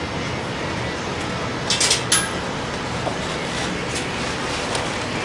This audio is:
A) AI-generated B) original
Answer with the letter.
B